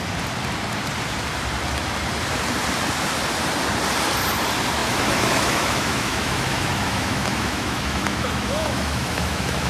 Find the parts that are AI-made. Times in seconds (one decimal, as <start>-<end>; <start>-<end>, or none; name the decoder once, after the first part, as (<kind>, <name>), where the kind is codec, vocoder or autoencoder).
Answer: 4.8-9.7 (autoencoder, DAC-VAE)